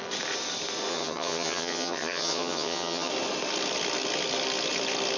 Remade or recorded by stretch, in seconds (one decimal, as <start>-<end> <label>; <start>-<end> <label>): 0.0-0.9 recorded; 0.9-3.1 remade; 3.1-5.2 recorded